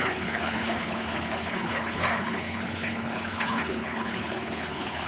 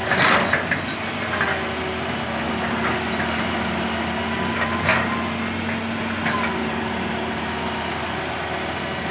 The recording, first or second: second